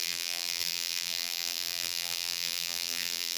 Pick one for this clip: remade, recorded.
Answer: remade